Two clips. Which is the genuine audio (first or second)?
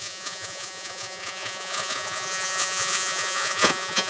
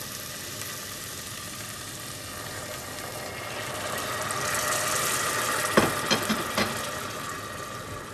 second